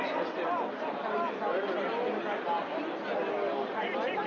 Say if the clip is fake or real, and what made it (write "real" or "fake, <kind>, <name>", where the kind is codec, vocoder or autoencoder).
real